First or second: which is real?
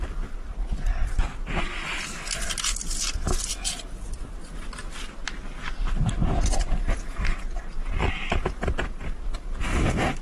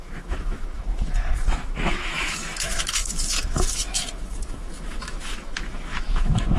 first